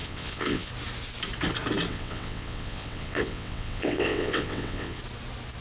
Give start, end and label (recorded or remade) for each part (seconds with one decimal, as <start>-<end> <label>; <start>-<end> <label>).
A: 0.0-0.7 remade; 0.7-1.9 recorded; 1.9-5.0 remade; 5.0-5.6 recorded